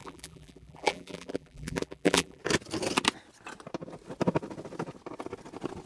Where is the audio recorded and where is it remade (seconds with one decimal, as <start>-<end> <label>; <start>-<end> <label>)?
0.0-2.4 remade; 2.4-5.9 recorded